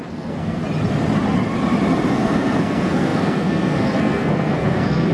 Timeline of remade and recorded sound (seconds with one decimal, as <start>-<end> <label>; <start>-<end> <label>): 0.0-0.6 remade; 0.6-2.1 recorded; 2.1-5.1 remade